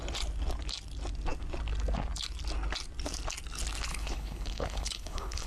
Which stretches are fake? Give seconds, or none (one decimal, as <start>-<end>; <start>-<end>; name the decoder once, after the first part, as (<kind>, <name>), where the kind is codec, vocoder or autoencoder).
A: 3.9-5.5 (codec, HILCodec)